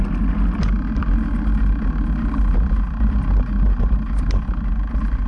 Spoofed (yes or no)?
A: no